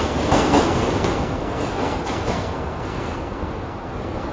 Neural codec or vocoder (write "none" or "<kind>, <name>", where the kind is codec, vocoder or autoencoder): codec, SNAC